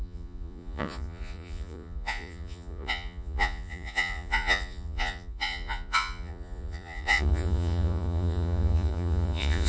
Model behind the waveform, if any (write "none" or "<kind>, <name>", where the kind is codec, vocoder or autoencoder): vocoder, Vocos